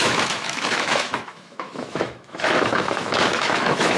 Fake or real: fake